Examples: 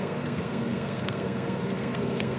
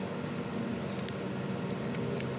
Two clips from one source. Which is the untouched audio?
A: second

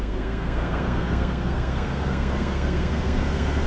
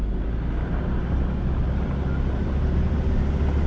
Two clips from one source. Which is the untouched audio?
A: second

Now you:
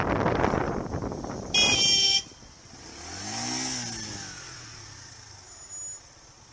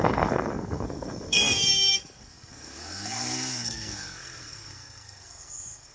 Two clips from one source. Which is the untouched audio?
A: first